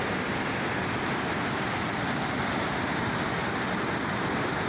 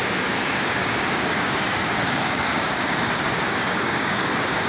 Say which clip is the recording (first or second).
first